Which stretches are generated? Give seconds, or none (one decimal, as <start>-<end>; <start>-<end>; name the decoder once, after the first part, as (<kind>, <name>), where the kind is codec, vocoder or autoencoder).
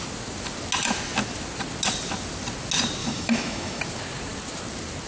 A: 3.0-3.8 (autoencoder, DAC-VAE)